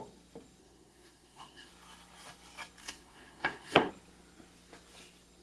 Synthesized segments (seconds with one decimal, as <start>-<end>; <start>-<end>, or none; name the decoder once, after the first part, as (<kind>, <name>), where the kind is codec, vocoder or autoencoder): 0.6-1.7 (codec, SNAC); 2.8-3.9